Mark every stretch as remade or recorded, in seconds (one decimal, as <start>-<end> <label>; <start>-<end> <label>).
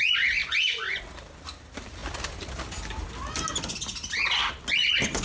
0.0-0.4 recorded; 0.4-1.0 remade; 1.0-5.2 recorded